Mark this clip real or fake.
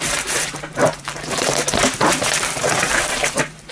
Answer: fake